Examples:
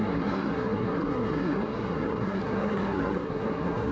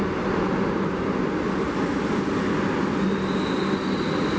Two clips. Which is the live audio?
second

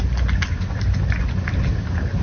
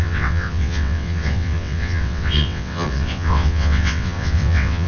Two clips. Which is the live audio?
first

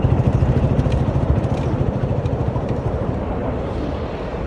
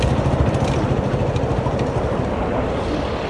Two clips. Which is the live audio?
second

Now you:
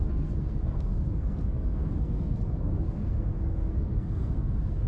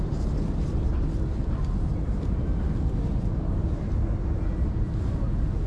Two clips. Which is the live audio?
second